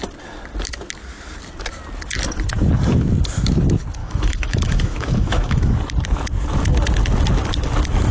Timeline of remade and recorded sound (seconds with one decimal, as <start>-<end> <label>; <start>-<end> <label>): 0.0-4.0 recorded; 4.0-5.7 remade; 5.7-8.1 recorded